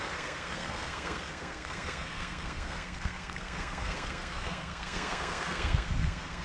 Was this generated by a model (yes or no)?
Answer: yes